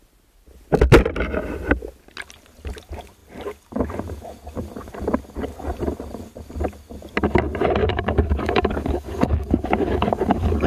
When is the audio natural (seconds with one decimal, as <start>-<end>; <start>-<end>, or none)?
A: 0.0-7.8